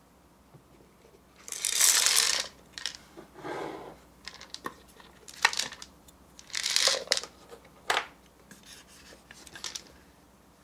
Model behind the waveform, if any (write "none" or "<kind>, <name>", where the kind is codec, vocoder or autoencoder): vocoder, BigVGAN v2